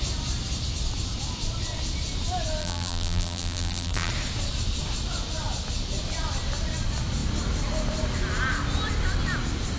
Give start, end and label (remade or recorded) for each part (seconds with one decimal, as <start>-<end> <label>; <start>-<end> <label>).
0.0-2.6 recorded; 2.6-4.1 remade; 4.1-9.8 recorded